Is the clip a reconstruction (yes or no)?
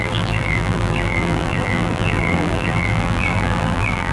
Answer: yes